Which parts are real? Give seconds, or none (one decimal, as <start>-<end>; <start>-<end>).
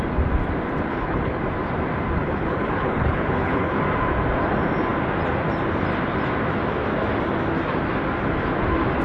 0.0-0.9; 1.4-2.2; 3.8-9.0